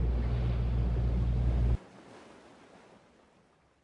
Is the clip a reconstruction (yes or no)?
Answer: no